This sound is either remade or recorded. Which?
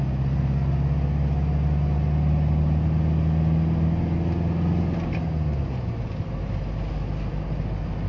recorded